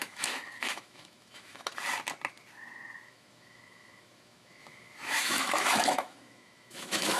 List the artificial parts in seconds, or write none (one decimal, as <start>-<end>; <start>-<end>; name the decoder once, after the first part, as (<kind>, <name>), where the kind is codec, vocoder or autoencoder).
0.0-1.7 (autoencoder, DAC-VAE); 3.0-7.2